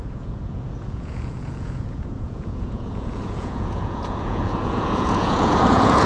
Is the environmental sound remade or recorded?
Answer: remade